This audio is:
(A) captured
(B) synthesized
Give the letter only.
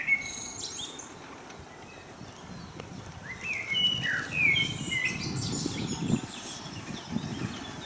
A